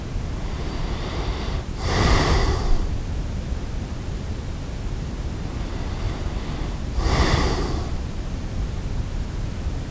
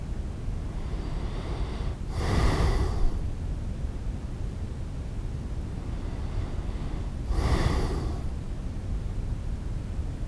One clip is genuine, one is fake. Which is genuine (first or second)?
second